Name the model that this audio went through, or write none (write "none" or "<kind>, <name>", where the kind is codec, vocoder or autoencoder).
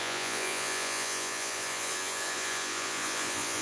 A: vocoder, Vocos